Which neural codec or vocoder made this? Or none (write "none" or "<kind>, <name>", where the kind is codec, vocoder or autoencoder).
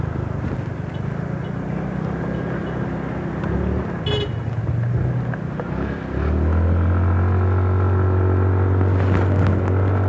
none